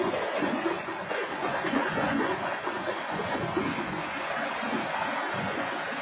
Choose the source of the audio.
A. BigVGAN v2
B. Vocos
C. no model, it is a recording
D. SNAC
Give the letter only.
B